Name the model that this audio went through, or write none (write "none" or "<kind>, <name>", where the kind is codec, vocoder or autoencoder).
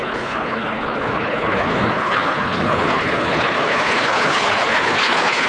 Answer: codec, HILCodec